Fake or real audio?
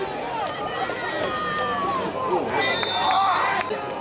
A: real